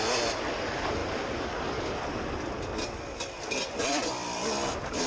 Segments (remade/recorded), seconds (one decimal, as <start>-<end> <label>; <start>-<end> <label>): 0.0-5.1 recorded